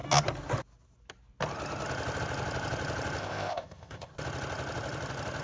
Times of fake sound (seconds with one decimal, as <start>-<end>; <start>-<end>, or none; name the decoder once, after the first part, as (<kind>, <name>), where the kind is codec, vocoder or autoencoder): 3.2-4.1 (codec, ZipCodec)